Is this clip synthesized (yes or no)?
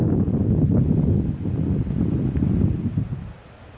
no